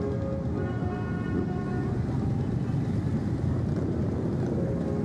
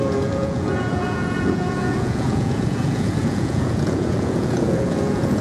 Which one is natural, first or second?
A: first